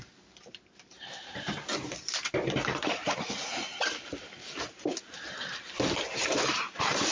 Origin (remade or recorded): remade